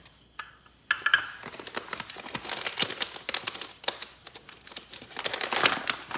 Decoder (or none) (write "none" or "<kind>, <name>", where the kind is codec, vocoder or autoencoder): none